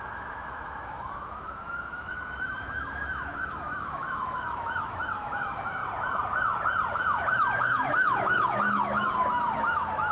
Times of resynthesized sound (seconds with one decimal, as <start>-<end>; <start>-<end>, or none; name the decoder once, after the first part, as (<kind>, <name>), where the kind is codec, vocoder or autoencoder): 0.0-5.8 (autoencoder, DAC-VAE); 6.9-10.1